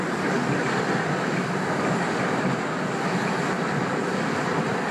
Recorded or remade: recorded